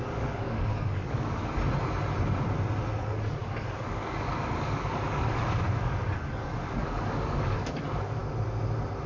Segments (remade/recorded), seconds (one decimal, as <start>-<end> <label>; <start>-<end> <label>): 0.0-1.4 remade; 1.4-3.0 recorded; 3.0-8.2 remade; 8.2-9.1 recorded